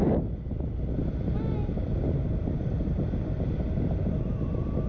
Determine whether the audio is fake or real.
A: real